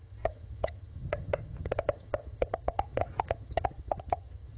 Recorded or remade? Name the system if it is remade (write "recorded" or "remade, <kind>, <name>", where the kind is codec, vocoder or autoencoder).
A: remade, vocoder, HiFi-GAN